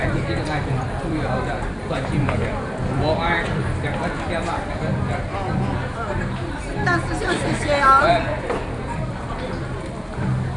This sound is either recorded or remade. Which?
remade